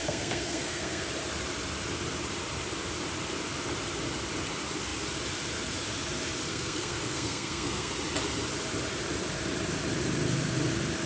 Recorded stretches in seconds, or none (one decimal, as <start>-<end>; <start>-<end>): 1.1-6.5; 7.9-11.1